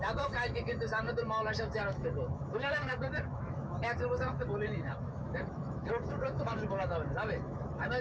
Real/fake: fake